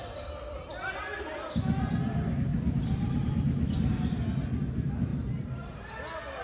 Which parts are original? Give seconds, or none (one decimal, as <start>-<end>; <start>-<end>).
0.0-2.5; 3.9-5.1; 5.9-6.4